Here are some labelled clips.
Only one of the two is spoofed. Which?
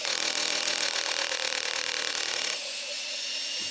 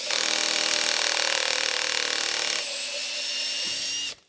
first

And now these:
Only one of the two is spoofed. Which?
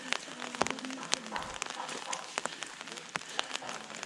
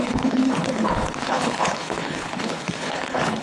second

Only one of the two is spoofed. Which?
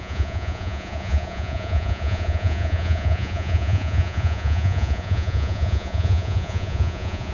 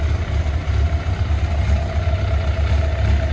first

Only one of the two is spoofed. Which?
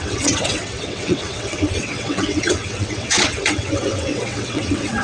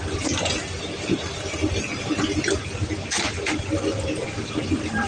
first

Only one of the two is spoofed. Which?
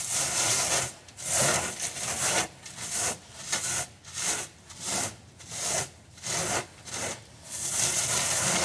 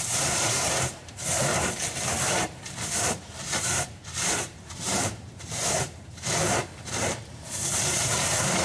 second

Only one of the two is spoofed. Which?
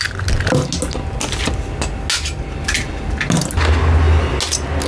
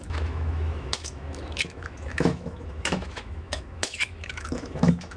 second